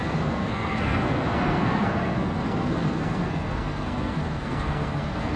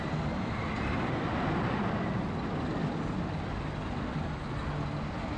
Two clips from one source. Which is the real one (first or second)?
second